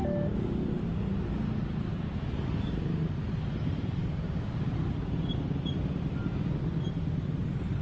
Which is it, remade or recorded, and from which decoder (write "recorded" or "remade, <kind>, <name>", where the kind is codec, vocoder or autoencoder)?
recorded